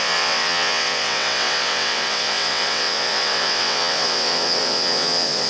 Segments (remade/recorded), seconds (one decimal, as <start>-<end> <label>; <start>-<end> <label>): 0.0-5.5 remade